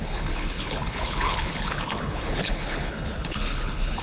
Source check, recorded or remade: remade